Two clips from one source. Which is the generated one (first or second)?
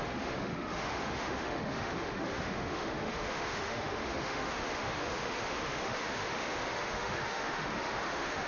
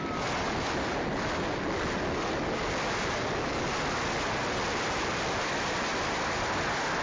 first